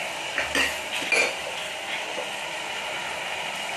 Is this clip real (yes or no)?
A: yes